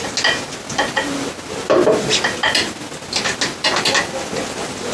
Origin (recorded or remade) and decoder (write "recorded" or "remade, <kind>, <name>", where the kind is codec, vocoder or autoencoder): recorded